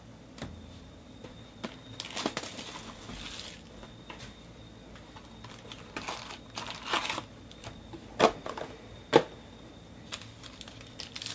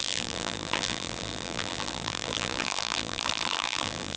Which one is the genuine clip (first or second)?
first